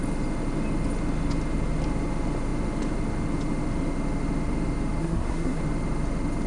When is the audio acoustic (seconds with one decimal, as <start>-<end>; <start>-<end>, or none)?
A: 0.0-5.0; 5.6-6.5